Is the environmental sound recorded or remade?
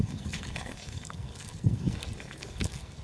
remade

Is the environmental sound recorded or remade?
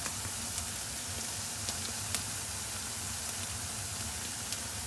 recorded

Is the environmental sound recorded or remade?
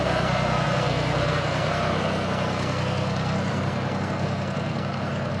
remade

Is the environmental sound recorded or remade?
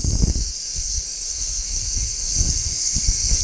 remade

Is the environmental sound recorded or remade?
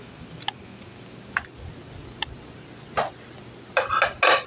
recorded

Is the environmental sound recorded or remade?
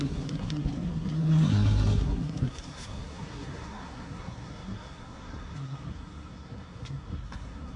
remade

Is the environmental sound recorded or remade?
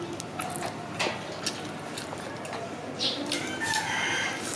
recorded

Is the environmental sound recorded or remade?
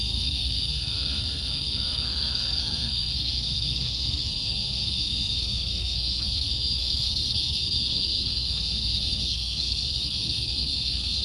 remade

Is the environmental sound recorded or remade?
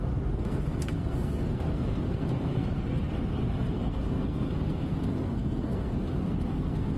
remade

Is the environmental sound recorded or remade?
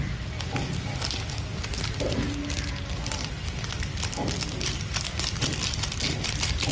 recorded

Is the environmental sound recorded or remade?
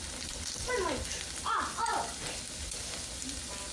recorded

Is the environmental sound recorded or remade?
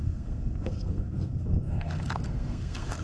remade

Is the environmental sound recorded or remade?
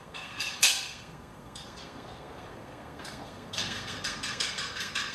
remade